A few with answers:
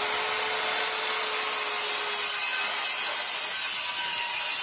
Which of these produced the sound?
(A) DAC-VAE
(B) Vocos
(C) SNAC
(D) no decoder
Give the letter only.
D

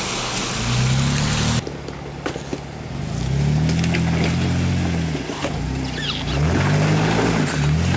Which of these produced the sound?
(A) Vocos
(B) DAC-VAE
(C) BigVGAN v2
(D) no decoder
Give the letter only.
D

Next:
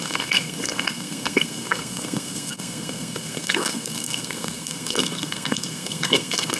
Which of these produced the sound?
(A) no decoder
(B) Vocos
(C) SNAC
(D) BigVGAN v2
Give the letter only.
C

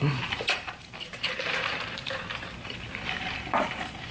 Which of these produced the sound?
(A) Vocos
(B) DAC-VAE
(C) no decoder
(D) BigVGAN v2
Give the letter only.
D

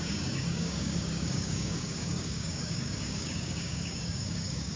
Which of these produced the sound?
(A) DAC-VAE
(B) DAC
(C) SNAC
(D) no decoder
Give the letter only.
B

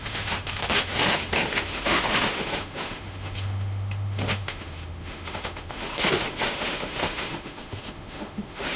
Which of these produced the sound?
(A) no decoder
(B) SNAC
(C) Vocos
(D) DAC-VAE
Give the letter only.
D